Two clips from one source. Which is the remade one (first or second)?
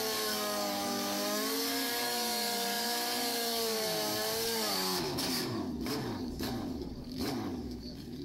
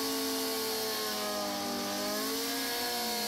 first